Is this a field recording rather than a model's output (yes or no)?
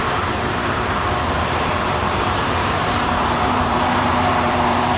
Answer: no